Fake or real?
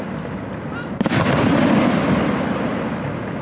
real